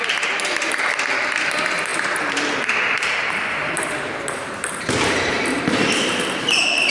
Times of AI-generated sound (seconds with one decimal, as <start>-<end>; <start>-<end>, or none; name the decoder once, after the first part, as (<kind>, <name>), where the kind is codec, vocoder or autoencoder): 0.0-1.9 (vocoder, BigVGAN v2); 2.6-6.9